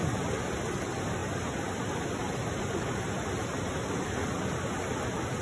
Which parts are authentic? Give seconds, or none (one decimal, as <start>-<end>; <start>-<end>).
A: 0.0-5.4